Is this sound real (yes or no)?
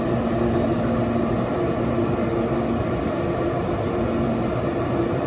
yes